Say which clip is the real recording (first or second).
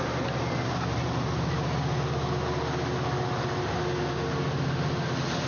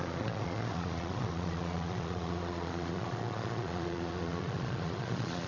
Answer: first